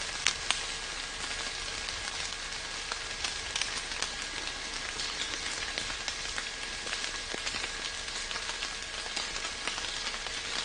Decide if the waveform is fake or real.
real